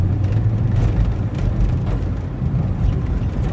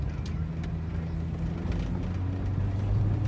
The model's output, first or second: first